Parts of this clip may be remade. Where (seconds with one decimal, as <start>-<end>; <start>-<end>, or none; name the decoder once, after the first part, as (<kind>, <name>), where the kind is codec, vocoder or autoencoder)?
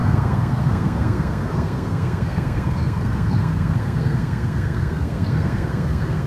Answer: 0.0-6.3 (codec, SNAC)